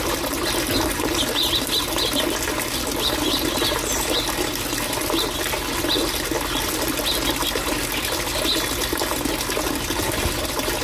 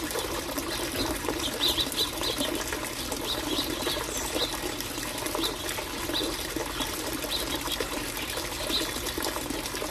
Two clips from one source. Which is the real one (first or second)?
first